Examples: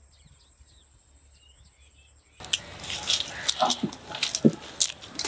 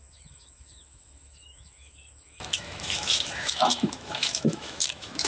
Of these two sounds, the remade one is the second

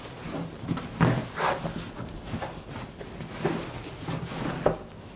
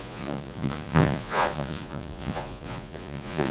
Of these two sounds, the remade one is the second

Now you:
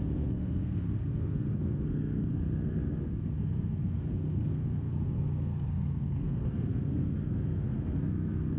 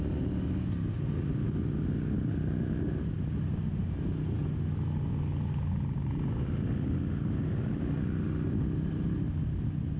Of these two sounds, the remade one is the first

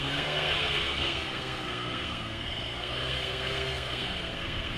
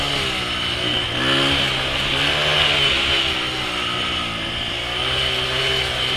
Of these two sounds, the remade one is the first